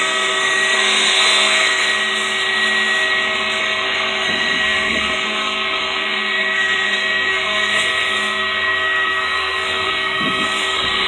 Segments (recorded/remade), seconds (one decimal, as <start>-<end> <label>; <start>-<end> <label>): 0.0-2.0 remade; 2.0-3.6 recorded; 3.6-11.1 remade

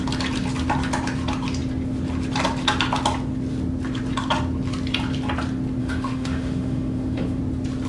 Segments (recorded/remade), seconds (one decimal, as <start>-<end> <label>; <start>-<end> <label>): 0.0-5.8 recorded; 5.8-7.4 remade; 7.4-7.9 recorded

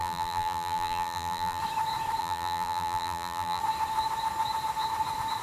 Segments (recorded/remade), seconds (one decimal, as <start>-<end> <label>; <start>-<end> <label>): 0.0-1.6 remade; 1.6-2.2 recorded; 2.2-3.6 remade; 3.6-5.4 recorded

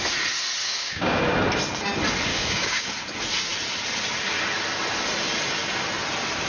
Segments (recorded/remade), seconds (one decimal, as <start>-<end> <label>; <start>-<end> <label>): 0.0-0.6 recorded; 0.6-1.2 remade; 1.2-2.3 recorded; 2.3-2.9 remade; 2.9-6.5 recorded

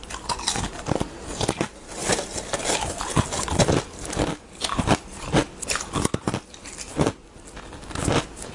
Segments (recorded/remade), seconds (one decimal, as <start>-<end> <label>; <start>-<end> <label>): 0.0-8.5 recorded

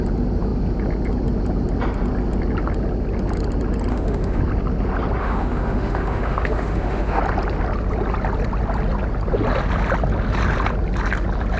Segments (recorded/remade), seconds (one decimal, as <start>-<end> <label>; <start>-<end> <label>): 0.0-3.9 recorded; 3.9-4.4 remade; 4.4-5.2 recorded; 5.2-7.2 remade; 7.2-11.6 recorded

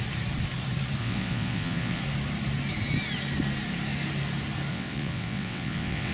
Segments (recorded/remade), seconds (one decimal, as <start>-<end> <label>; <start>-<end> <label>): 0.0-1.0 recorded; 1.0-2.0 remade; 2.0-4.7 recorded; 4.7-6.1 remade

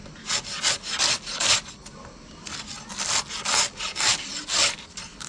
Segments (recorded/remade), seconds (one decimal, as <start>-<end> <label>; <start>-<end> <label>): 0.0-5.3 recorded